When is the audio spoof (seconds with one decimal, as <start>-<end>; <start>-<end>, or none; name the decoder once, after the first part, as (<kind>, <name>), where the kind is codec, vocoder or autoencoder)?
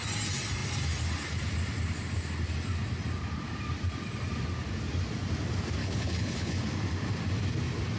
5.8-6.6 (codec, HILCodec)